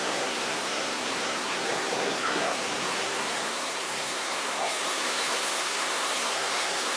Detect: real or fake fake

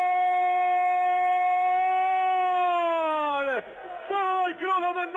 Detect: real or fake fake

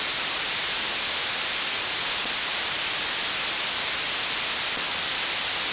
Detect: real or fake real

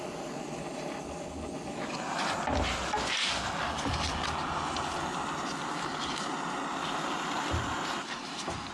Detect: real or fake real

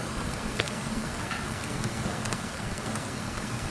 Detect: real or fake fake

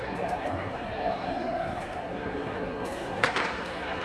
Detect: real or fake fake